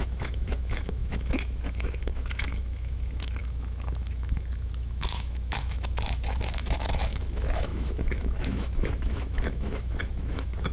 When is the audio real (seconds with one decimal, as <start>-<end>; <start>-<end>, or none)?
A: none